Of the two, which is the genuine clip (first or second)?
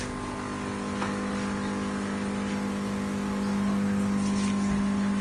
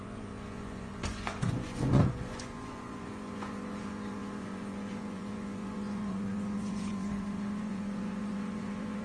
first